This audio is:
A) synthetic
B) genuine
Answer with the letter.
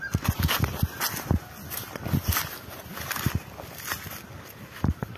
B